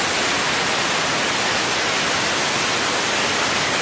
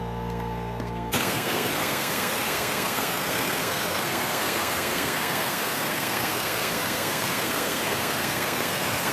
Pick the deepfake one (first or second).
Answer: second